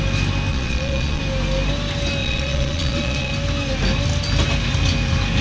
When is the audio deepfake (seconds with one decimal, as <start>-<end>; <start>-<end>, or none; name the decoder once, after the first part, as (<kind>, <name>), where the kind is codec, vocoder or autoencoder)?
0.5-1.2 (vocoder, Vocos); 2.2-3.3